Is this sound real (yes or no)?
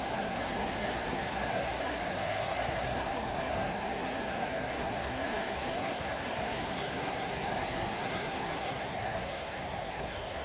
no